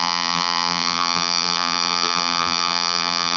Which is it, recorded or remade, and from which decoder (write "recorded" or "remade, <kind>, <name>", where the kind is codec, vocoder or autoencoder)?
remade, vocoder, BigVGAN v2